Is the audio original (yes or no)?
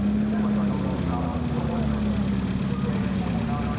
yes